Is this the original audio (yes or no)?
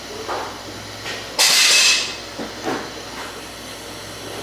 yes